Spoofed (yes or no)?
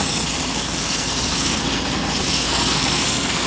yes